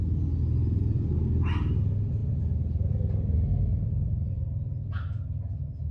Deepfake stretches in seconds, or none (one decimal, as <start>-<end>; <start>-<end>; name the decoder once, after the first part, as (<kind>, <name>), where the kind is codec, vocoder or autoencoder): none